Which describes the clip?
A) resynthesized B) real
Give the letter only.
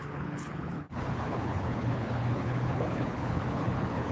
A